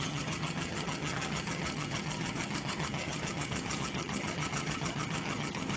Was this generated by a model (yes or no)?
yes